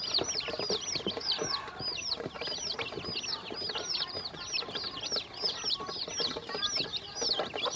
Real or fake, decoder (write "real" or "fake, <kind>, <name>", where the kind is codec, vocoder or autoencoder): fake, vocoder, BigVGAN v2